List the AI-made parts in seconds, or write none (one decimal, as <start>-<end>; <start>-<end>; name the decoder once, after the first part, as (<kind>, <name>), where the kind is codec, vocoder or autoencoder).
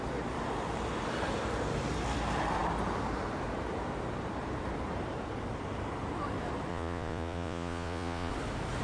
6.7-8.3 (vocoder, Vocos)